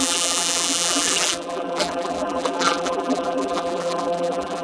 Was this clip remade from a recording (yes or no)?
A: yes